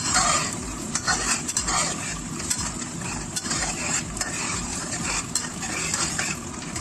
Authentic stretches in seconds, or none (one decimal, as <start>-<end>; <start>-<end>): none